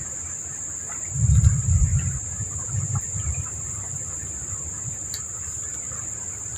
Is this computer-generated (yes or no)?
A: yes